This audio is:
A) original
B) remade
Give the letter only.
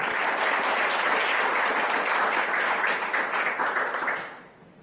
A